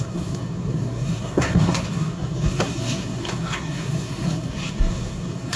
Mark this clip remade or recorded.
remade